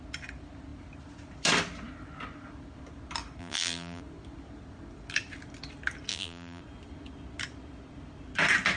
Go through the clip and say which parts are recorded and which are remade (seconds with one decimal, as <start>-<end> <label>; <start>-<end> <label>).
0.0-3.4 recorded; 3.4-4.0 remade; 4.0-6.1 recorded; 6.1-6.6 remade; 6.6-8.8 recorded